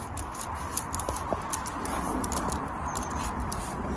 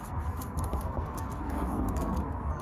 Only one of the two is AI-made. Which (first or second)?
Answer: second